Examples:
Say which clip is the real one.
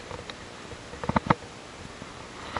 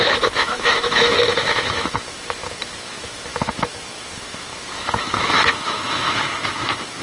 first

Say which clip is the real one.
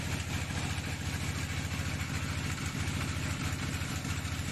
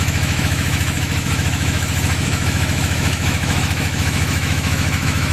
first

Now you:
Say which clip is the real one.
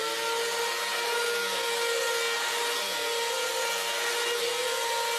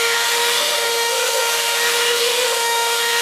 first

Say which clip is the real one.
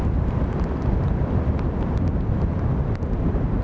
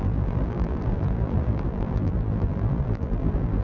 first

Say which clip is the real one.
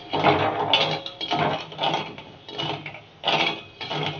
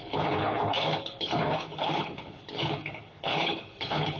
first